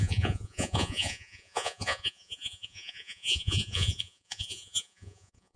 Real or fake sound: fake